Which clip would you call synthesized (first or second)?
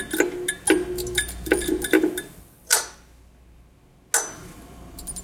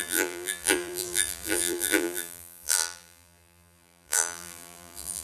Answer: second